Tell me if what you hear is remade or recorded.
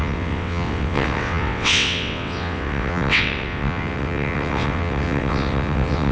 remade